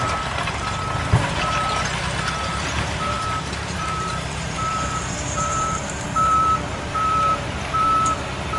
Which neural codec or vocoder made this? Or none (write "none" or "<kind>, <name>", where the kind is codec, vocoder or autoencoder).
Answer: vocoder, BigVGAN v2